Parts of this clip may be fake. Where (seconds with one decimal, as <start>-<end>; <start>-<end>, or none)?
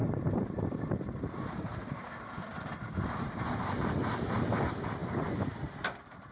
0.0-3.8